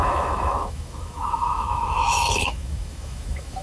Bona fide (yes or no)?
no